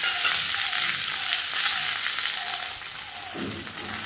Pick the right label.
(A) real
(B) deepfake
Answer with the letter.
A